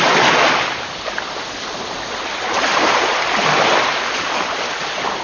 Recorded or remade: recorded